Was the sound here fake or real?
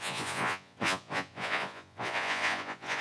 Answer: fake